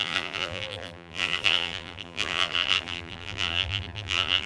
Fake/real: fake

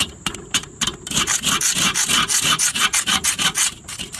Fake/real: real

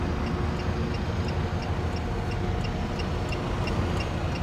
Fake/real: real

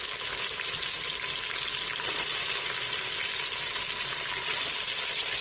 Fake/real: real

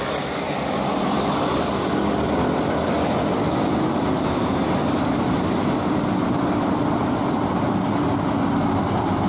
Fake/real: fake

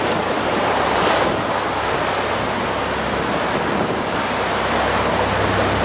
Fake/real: real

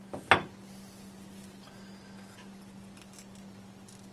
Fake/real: real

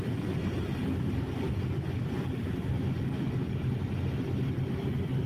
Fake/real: real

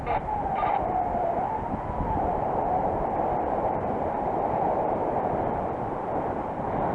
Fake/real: fake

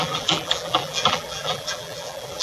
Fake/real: fake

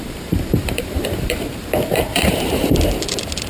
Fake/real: fake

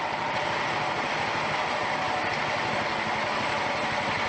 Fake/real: real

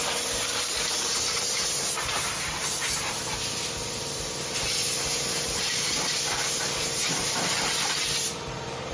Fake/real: fake